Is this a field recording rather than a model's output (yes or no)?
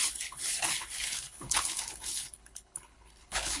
no